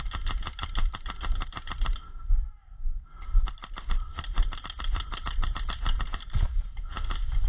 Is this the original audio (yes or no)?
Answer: yes